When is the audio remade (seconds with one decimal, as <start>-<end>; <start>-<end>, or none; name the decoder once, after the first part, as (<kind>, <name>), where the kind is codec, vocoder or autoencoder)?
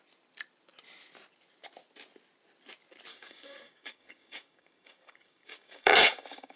3.1-6.6 (codec, DAC)